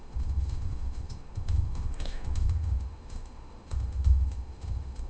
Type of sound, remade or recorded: remade